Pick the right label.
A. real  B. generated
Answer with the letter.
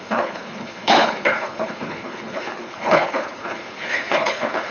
B